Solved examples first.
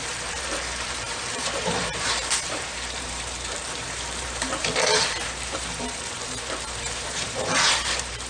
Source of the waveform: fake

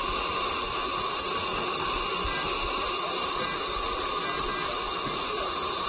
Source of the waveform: real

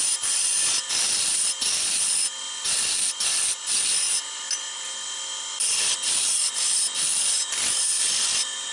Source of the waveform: real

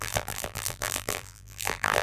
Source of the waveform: fake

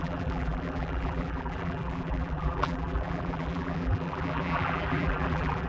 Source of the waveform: fake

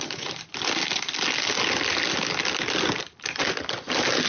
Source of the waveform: real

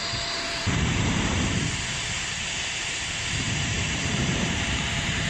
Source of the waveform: fake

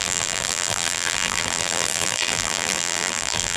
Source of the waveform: fake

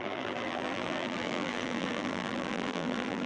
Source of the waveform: fake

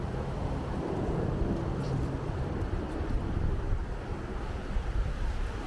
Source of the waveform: fake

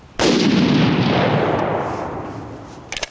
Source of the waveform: real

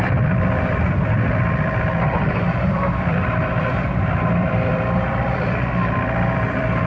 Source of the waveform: fake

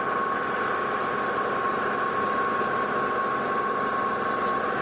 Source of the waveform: real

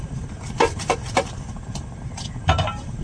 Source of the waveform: fake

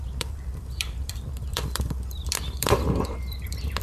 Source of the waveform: fake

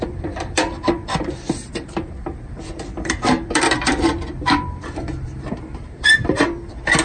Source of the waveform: fake